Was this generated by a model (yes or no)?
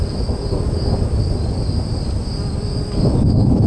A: no